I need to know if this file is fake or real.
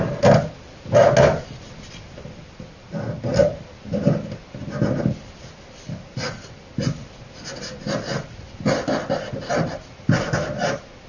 real